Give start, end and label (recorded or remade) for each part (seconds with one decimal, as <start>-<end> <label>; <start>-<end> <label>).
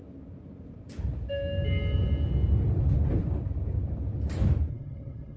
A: 0.0-4.7 recorded; 4.7-5.4 remade